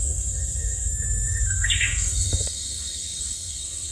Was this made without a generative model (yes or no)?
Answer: no